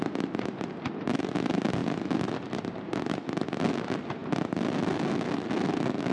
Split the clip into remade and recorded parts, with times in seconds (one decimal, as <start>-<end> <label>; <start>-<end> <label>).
0.0-6.1 recorded